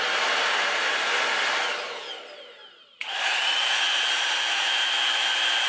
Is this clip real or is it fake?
real